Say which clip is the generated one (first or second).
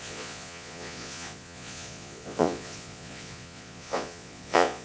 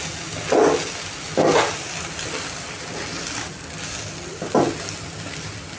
first